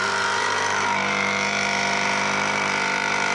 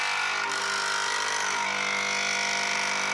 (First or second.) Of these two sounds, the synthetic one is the first